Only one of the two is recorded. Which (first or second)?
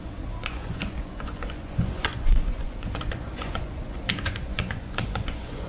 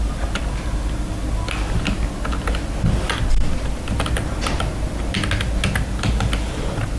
second